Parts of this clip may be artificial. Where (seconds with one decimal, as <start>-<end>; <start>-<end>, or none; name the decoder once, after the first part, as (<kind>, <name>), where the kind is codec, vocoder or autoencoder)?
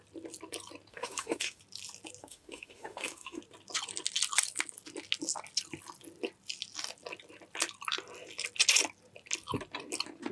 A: 0.9-1.6 (autoencoder, DAC-VAE); 2.2-3.4